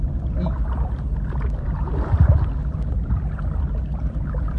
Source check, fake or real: real